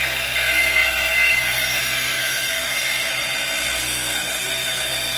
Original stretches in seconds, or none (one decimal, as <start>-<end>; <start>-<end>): 3.1-3.8

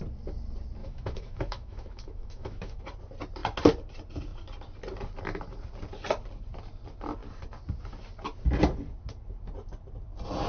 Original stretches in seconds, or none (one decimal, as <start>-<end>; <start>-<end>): 0.0-0.8; 2.8-10.5

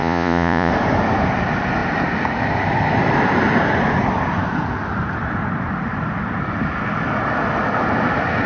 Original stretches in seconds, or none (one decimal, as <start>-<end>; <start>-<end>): 0.7-8.5

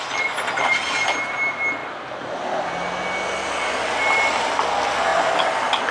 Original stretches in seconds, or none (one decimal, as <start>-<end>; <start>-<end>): 0.0-5.9

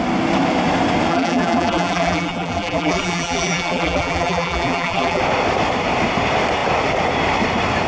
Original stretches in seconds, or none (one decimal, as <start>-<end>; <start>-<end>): 0.0-1.1; 5.2-7.9